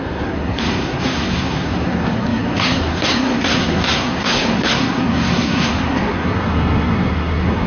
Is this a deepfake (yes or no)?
yes